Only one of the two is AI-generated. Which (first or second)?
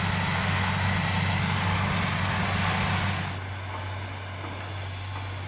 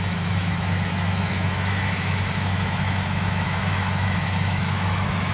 second